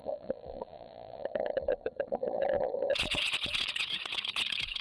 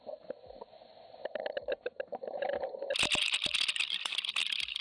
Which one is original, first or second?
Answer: second